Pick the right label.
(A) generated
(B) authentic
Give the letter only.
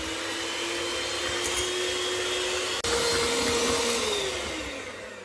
B